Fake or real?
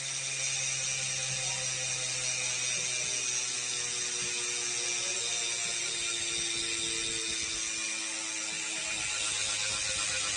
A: real